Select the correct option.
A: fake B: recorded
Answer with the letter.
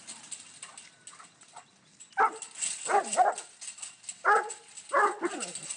B